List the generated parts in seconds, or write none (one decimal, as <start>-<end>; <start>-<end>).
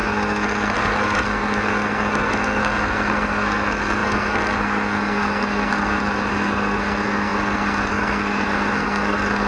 0.0-9.5